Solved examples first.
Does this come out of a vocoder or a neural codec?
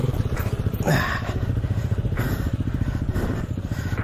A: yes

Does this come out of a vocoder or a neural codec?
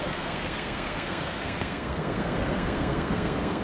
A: yes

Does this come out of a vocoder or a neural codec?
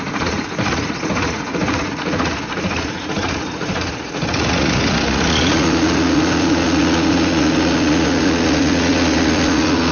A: yes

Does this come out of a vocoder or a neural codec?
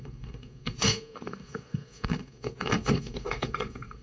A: yes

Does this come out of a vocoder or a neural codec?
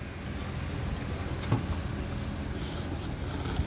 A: no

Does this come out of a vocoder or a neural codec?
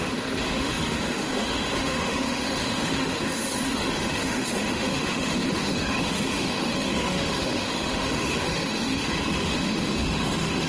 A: yes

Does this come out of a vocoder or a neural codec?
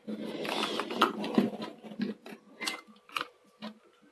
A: no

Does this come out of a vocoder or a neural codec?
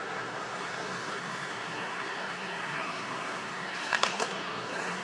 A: yes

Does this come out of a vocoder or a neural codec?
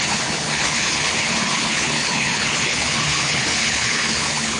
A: yes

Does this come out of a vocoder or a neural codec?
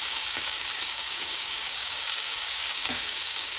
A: yes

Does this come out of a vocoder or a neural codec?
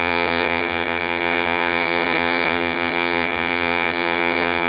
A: yes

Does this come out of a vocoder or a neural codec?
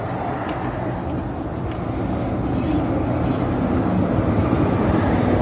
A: no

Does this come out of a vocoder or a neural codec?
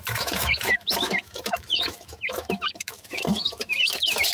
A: yes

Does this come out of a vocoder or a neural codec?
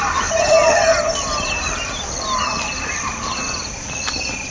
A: no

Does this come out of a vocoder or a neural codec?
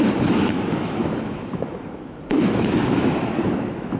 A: yes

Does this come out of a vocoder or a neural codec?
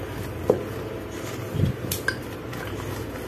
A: no